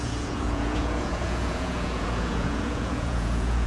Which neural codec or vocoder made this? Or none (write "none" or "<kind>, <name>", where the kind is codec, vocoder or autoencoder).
vocoder, Vocos